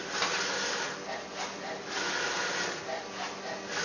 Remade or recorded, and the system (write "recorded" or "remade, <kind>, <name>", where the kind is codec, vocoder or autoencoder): recorded